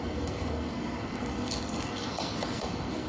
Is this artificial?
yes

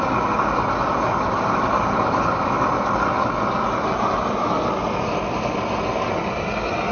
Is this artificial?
no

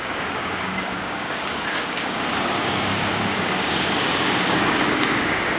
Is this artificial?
yes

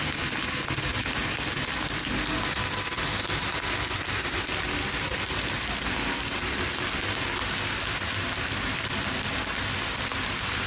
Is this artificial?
no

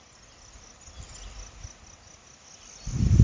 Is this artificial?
no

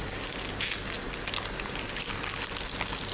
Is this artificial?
no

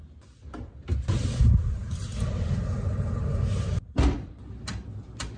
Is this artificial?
no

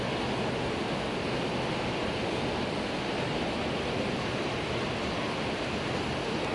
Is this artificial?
no